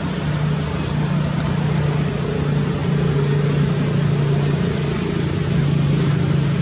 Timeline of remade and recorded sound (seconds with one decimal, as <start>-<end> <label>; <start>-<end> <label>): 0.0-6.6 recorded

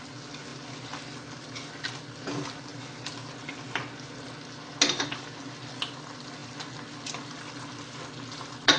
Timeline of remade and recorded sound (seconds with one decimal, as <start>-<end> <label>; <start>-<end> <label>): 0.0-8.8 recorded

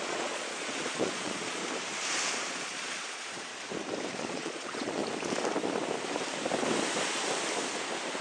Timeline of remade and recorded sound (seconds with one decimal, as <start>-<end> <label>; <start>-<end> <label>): 0.0-1.6 remade; 1.6-2.3 recorded; 2.3-3.5 remade; 3.5-4.1 recorded; 4.1-5.0 remade; 5.0-8.2 recorded

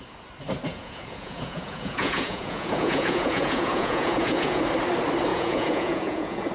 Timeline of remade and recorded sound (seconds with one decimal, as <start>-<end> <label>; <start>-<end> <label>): 0.0-0.7 recorded; 0.7-4.6 remade; 4.6-5.3 recorded; 5.3-6.5 remade